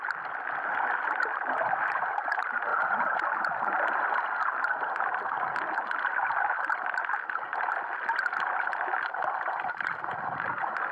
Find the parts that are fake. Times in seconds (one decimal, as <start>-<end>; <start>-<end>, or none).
none

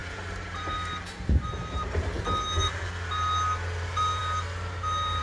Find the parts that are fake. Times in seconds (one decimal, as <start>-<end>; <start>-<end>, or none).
0.0-2.2

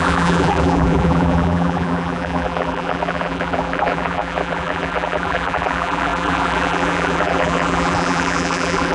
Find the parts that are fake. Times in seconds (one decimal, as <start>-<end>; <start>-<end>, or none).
0.0-8.9